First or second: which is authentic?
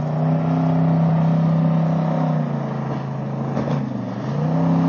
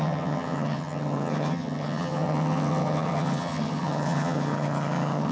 first